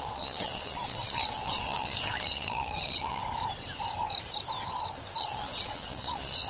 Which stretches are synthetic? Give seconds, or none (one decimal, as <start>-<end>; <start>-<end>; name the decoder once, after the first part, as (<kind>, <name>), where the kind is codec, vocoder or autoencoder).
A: 0.0-3.2 (vocoder, WaveNeXt); 5.2-6.5